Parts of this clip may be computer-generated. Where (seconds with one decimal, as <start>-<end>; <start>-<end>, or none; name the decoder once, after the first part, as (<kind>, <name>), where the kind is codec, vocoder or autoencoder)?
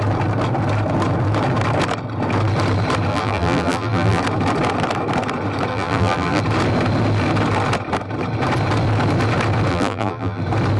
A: 3.1-4.2 (vocoder, BigVGAN v2); 5.7-6.4; 9.7-10.4